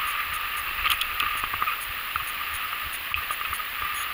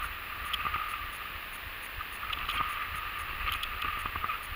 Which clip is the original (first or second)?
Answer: second